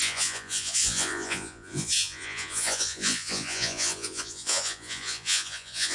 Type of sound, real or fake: fake